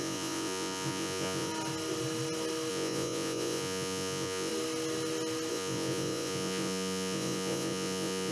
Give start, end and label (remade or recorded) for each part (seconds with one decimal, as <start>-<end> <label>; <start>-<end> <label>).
0.0-1.5 remade; 1.5-2.7 recorded; 2.7-4.5 remade; 4.5-5.5 recorded; 5.5-8.3 remade

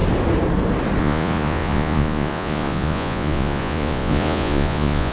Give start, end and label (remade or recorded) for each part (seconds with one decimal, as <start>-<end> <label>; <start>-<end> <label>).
0.0-1.0 recorded; 1.0-5.1 remade

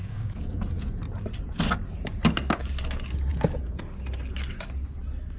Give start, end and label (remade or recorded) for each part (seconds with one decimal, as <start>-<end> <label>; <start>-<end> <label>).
0.0-1.0 remade; 1.0-3.3 recorded; 3.3-3.8 remade; 3.8-5.4 recorded

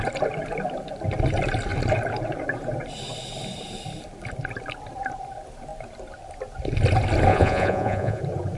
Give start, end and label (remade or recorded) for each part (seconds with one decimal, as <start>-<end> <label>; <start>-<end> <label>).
0.0-7.3 recorded; 7.3-8.2 remade; 8.2-8.6 recorded

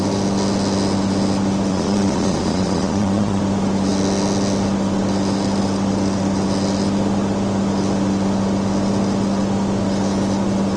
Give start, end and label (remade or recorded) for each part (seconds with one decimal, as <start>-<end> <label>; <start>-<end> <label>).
0.0-1.7 recorded; 1.7-3.4 remade; 3.4-10.8 recorded

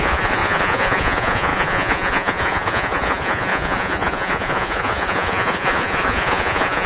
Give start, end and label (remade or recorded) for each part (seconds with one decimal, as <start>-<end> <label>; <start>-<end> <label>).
0.0-6.9 remade

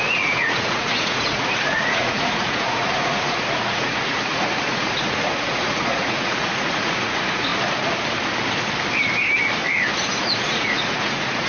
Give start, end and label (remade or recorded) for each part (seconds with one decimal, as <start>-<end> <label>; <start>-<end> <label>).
0.0-7.5 remade; 7.5-10.1 recorded; 10.1-11.5 remade